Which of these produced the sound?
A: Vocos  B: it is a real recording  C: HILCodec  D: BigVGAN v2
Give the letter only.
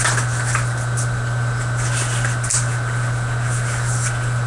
B